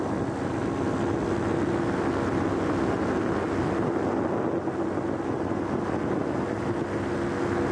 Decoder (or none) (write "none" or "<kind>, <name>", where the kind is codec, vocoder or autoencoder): none